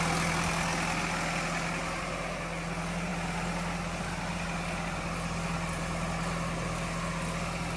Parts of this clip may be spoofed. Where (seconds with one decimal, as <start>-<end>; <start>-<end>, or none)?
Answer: none